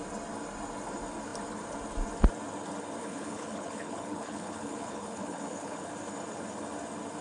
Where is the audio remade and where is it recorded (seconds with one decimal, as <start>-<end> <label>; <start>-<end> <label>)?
0.0-3.0 recorded; 3.0-5.9 remade; 5.9-7.2 recorded

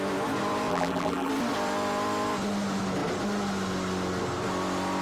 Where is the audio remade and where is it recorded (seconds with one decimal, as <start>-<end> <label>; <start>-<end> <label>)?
0.0-0.7 recorded; 0.7-1.3 remade; 1.3-5.0 recorded